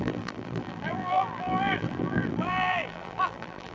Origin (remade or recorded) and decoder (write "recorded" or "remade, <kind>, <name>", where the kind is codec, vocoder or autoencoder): remade, vocoder, BigVGAN v2